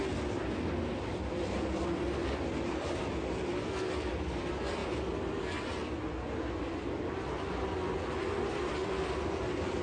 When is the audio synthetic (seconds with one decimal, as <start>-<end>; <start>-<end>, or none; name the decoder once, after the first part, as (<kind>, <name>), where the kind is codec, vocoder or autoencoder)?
none